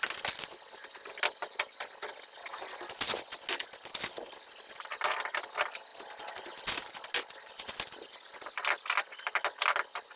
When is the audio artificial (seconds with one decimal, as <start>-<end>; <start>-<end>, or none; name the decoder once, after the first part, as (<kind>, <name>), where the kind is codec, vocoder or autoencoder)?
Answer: none